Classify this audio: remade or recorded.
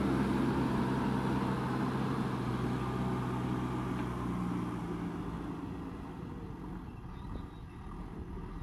recorded